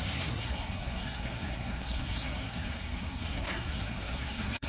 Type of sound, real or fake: fake